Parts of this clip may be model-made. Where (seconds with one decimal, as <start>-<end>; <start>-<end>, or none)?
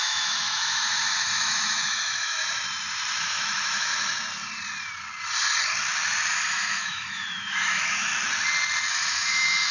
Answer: 0.0-2.4; 3.2-3.9; 6.3-8.1; 8.9-9.7